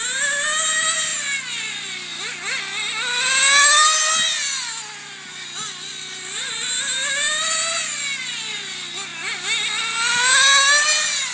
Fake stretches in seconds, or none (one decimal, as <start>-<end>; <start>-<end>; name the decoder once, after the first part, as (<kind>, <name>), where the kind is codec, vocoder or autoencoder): none